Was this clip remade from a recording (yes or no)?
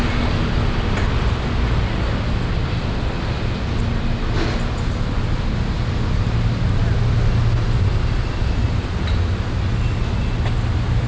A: no